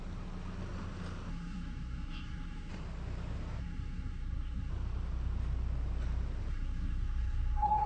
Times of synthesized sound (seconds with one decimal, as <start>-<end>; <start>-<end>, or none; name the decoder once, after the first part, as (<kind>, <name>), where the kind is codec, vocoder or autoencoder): 1.3-2.7 (codec, SNAC); 3.6-4.7; 6.5-7.9